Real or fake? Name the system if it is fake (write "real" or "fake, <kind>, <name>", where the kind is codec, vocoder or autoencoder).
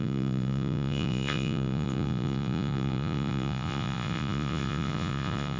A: fake, vocoder, Vocos